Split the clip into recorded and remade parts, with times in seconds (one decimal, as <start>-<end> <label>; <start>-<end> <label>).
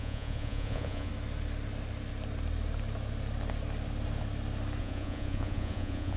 0.0-1.1 remade; 1.1-4.8 recorded; 4.8-6.2 remade